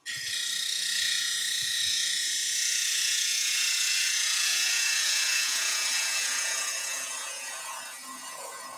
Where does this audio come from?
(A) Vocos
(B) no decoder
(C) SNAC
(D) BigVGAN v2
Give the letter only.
A